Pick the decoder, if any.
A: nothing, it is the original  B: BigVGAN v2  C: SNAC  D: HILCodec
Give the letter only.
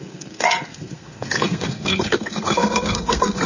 C